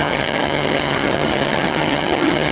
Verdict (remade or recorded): remade